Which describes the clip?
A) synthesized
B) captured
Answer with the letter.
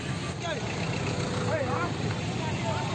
B